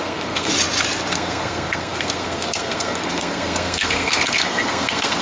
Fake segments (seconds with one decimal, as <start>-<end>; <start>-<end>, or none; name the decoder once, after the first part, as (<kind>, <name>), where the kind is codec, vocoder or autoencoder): 0.0-0.5 (codec, SNAC); 1.1-5.2